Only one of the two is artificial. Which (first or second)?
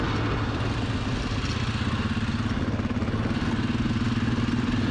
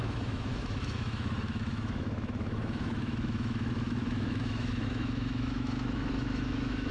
second